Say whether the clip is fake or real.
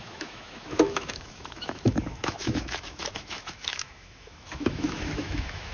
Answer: fake